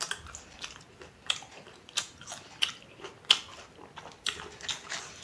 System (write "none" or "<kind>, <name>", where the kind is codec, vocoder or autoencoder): none